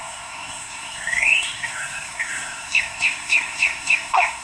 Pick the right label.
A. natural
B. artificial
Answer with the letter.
B